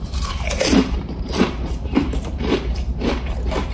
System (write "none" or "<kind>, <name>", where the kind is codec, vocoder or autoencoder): vocoder, BigVGAN v2